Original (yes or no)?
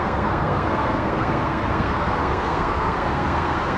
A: no